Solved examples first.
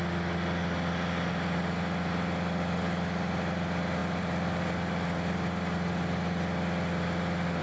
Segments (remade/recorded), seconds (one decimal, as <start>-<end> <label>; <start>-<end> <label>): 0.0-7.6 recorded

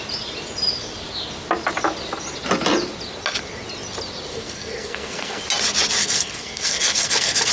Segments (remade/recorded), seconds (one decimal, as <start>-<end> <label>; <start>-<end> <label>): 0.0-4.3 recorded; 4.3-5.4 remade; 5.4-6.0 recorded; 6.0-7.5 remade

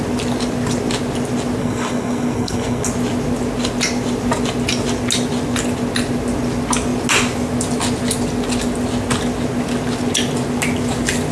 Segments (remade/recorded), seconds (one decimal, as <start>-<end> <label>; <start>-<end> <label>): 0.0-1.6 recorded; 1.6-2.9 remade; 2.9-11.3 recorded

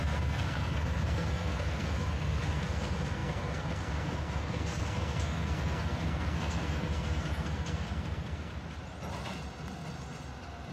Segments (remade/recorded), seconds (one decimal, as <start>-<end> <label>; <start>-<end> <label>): 0.0-8.5 remade; 8.5-10.7 recorded

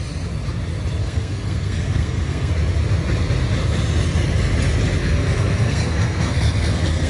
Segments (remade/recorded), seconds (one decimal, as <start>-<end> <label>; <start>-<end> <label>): 0.0-1.0 recorded; 1.0-2.5 remade; 2.5-5.0 recorded; 5.0-7.1 remade

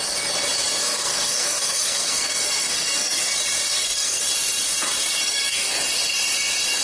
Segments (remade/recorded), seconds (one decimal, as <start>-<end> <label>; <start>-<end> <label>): 0.0-0.8 recorded; 0.8-3.2 remade; 3.2-3.7 recorded; 3.7-4.2 remade; 4.2-5.2 recorded; 5.2-5.7 remade; 5.7-6.8 recorded

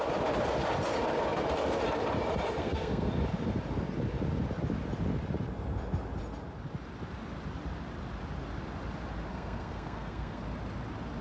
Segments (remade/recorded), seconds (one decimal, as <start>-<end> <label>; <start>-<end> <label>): 0.0-2.6 recorded; 2.6-3.1 remade; 3.1-9.3 recorded; 9.3-10.4 remade; 10.4-11.2 recorded

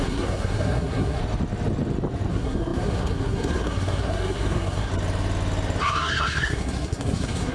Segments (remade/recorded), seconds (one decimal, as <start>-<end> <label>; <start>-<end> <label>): 0.0-1.2 remade; 1.2-2.3 recorded; 2.3-4.9 remade; 4.9-5.8 recorded; 5.8-7.5 remade